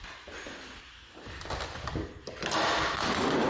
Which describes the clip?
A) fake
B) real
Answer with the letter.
B